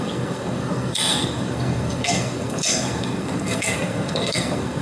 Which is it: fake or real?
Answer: fake